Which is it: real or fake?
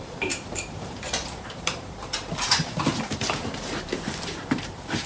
fake